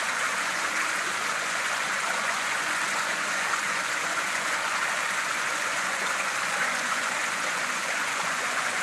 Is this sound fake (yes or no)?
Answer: yes